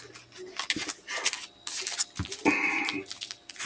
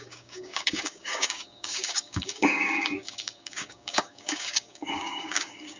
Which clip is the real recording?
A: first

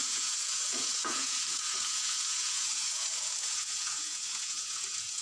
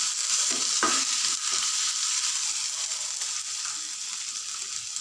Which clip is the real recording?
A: second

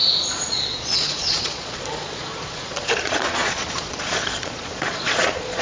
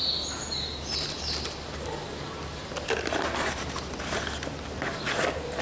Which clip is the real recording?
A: second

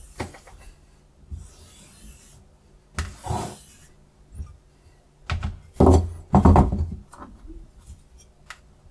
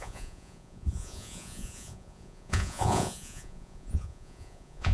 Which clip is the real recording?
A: first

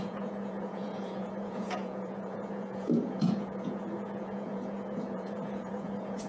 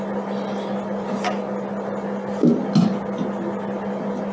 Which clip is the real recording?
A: second